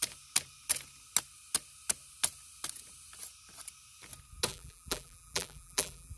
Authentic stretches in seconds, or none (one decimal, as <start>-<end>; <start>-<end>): 0.0-4.5